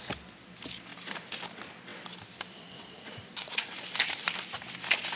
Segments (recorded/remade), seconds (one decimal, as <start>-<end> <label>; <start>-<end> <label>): 0.0-0.9 recorded; 0.9-1.4 remade; 1.4-1.9 recorded; 1.9-4.3 remade; 4.3-5.2 recorded